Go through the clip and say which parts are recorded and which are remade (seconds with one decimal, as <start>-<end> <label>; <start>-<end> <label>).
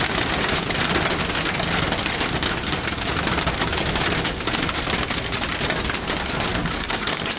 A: 0.0-6.5 recorded; 6.5-7.4 remade